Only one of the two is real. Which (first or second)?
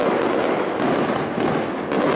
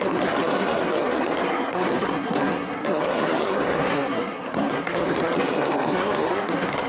first